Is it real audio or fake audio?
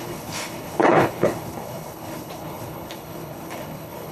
fake